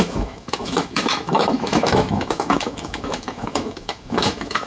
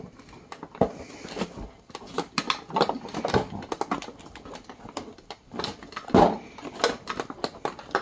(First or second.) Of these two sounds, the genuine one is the second